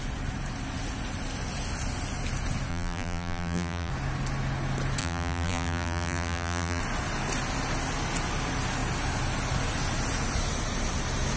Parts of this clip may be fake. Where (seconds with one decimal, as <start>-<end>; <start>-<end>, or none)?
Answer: 2.7-3.9; 5.0-6.8